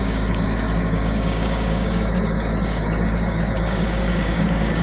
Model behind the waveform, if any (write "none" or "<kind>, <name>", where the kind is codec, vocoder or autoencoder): codec, DAC